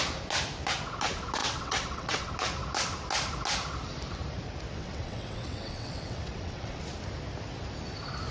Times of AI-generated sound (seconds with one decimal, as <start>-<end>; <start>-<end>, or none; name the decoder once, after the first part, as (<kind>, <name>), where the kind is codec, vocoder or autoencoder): 1.4-2.3 (vocoder, WaveNeXt); 4.7-6.8